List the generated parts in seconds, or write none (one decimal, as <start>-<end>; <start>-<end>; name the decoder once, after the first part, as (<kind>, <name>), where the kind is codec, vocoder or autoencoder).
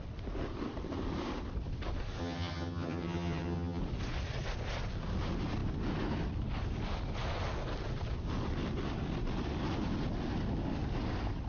2.2-3.8 (vocoder, HiFi-GAN)